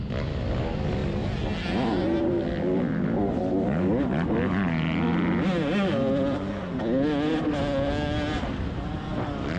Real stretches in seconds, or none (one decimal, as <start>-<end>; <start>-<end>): 0.0-9.6